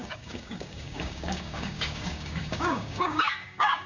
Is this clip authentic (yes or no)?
no